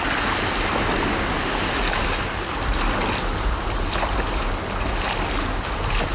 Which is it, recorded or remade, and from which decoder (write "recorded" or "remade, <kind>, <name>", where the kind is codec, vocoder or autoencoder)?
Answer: recorded